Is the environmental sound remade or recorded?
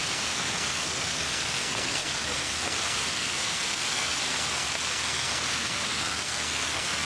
remade